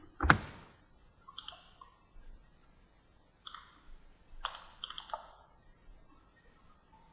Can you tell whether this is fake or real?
real